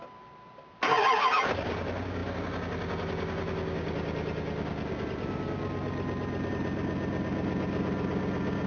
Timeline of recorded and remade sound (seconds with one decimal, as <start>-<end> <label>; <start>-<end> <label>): 0.0-8.7 recorded